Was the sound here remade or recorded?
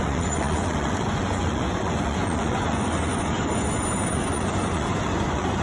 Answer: remade